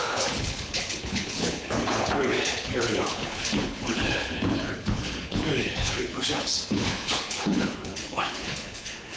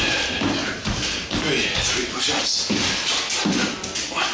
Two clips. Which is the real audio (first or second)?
second